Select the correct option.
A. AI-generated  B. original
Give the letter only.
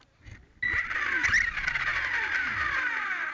B